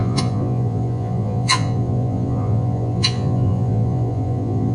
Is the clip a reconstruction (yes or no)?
yes